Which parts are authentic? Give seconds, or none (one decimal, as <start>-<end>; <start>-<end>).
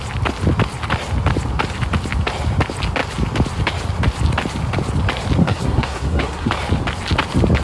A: 0.0-5.4; 6.5-7.6